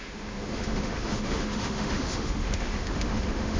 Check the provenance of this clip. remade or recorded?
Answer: remade